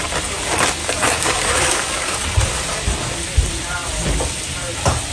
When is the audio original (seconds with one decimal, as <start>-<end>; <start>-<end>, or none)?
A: 0.0-0.8; 2.2-5.1